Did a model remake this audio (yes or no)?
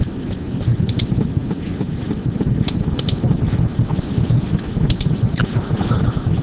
no